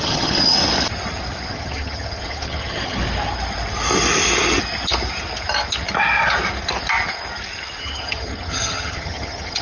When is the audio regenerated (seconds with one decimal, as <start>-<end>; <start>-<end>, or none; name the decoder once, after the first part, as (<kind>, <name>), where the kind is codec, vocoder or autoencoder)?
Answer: 0.0-0.6 (vocoder, HiFi-GAN); 1.5-3.0; 7.8-9.6